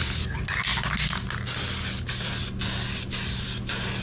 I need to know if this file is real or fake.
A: real